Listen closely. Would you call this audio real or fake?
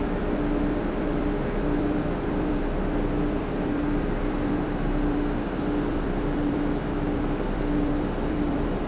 fake